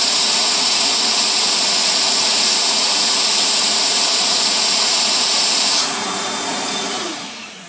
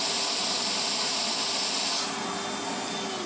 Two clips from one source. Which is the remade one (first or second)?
first